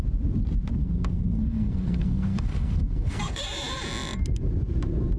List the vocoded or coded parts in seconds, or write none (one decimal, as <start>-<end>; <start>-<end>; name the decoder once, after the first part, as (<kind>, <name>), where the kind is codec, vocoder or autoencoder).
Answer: 0.7-3.4 (codec, SNAC)